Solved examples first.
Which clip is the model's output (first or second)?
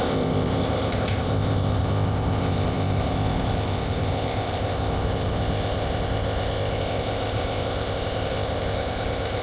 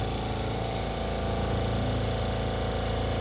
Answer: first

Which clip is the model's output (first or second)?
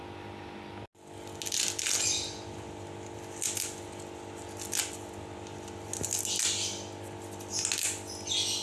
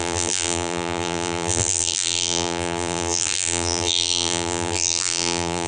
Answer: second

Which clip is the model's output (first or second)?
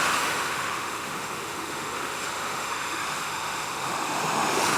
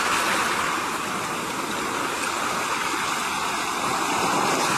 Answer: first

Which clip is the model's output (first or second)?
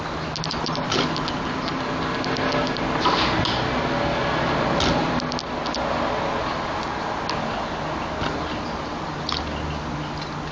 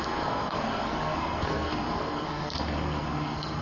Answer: second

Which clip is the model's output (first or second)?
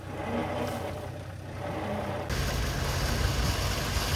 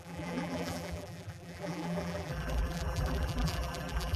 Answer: second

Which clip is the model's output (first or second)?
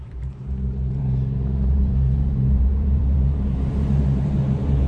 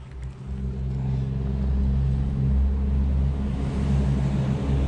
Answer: first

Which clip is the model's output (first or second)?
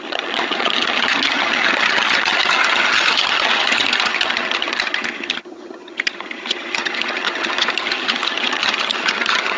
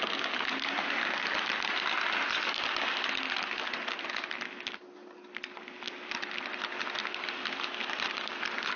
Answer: first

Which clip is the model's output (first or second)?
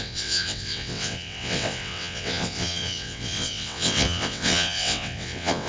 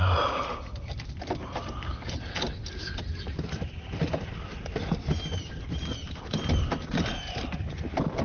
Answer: first